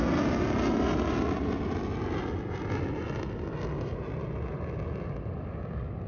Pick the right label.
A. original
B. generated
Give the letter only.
A